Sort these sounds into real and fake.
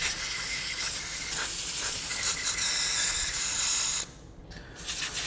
real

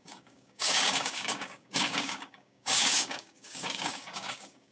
fake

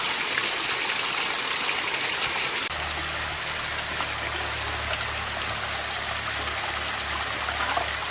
real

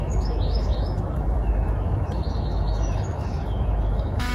fake